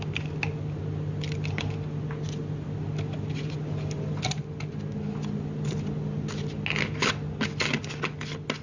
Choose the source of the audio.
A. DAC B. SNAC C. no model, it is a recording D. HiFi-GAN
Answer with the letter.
C